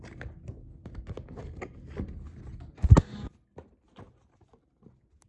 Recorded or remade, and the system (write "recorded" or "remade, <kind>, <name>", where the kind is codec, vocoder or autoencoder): recorded